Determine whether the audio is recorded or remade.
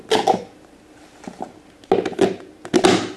recorded